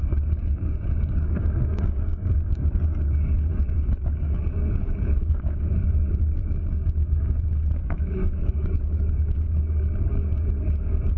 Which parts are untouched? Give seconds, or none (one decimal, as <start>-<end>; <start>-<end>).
none